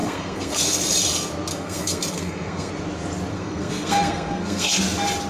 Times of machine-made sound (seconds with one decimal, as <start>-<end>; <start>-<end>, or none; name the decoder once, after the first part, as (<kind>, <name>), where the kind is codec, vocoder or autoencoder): 0.0-0.8 (codec, SNAC); 1.5-2.7; 3.3-4.8